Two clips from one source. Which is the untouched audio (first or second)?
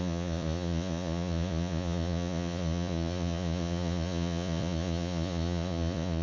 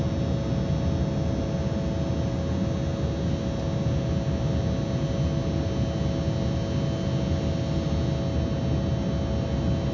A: second